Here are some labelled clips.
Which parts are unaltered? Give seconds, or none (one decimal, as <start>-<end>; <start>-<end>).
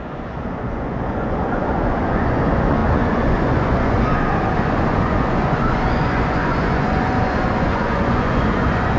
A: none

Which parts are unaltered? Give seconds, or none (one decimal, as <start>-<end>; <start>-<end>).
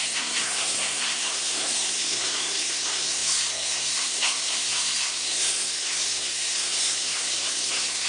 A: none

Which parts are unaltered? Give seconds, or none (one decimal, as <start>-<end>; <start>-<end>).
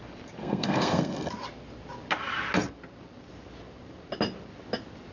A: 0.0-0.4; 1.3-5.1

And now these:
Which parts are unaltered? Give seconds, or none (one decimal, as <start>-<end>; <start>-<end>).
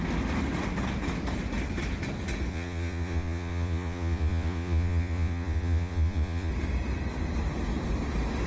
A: 0.0-2.5; 6.5-8.5